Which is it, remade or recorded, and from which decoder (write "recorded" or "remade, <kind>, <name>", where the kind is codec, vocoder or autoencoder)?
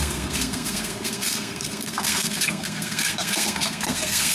remade, codec, SNAC